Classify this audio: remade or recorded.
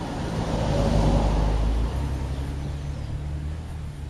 recorded